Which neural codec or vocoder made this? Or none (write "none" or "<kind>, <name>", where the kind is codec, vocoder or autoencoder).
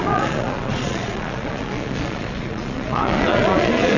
vocoder, Vocos